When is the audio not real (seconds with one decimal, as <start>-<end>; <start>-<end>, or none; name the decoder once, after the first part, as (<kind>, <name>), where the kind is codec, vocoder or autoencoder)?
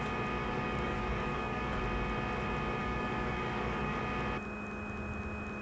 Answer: 0.4-1.8 (codec, DAC); 2.8-4.0